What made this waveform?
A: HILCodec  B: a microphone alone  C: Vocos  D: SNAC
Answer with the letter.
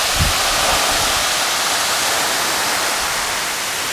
B